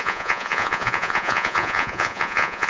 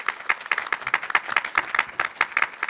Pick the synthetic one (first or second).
first